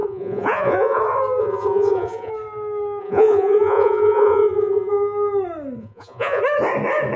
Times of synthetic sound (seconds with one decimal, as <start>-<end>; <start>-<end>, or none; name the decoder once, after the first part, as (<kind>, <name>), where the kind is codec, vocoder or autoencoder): 0.0-1.0 (vocoder, Vocos); 1.4-2.3; 3.0-4.9; 5.8-6.4